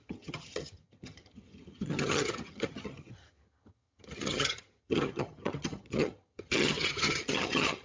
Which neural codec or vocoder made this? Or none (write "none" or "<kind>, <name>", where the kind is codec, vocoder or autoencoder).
vocoder, HiFi-GAN